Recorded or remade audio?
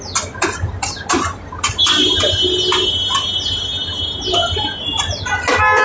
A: recorded